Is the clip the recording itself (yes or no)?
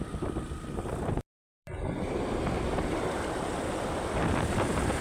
no